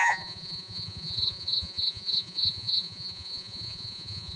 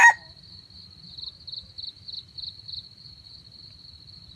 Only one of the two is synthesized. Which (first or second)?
first